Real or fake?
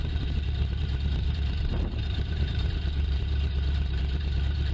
fake